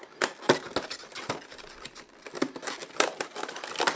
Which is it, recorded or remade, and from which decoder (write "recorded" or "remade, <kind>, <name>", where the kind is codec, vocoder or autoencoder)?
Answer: recorded